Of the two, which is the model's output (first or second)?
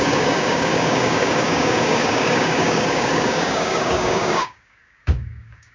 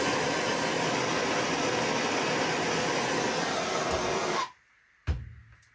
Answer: first